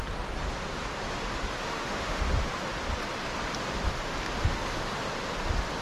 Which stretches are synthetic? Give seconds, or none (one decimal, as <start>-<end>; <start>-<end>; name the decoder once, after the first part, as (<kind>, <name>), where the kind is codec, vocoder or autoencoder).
1.6-2.2 (autoencoder, DAC-VAE)